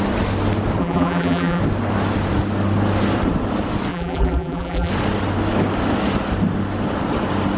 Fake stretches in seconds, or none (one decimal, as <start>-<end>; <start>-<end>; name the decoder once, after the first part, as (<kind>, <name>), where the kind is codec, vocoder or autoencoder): 0.8-1.6 (vocoder, BigVGAN v2); 3.9-4.9